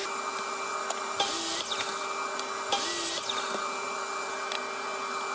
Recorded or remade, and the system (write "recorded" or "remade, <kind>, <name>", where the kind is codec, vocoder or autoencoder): recorded